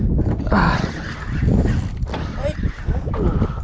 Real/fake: real